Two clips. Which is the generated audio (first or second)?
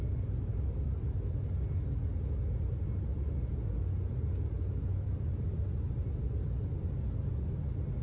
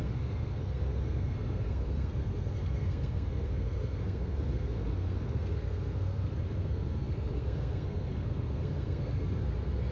second